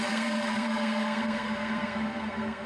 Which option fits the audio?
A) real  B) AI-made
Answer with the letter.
B